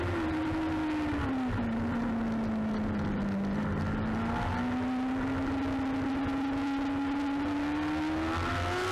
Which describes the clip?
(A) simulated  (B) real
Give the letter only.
B